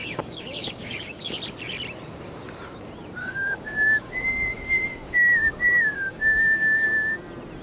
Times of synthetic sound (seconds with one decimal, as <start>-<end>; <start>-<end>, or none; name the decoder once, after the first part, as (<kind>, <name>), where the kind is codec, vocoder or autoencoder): 0.0-1.3 (codec, DAC); 3.2-7.1